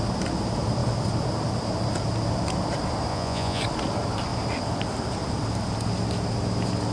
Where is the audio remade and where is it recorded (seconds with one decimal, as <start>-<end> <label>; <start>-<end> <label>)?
0.0-3.1 recorded; 3.1-3.6 remade; 3.6-6.9 recorded